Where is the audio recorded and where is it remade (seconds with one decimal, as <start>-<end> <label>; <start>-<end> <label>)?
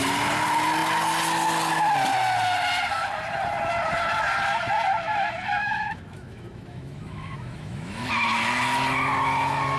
0.0-5.6 recorded; 5.6-8.1 remade; 8.1-9.8 recorded